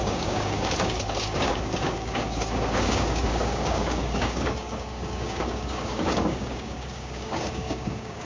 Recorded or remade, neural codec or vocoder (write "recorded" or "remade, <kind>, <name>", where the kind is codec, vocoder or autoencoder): remade, codec, DAC